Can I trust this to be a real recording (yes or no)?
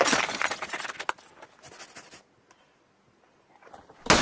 yes